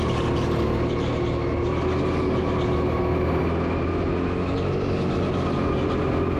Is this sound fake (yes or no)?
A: no